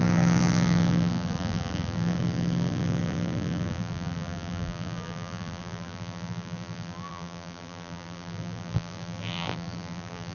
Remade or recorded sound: remade